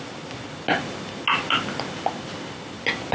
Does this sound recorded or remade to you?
recorded